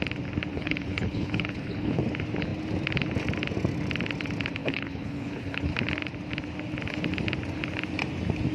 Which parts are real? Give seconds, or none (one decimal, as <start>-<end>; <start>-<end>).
0.0-0.5; 2.0-4.6; 5.7-8.5